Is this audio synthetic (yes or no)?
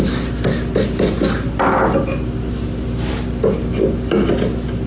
no